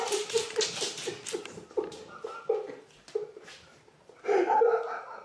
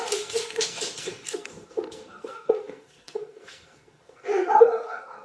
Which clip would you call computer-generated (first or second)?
second